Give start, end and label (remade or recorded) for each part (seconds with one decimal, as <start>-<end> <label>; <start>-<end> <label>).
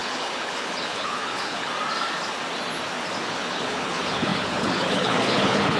0.0-1.7 remade; 1.7-3.3 recorded; 3.3-5.8 remade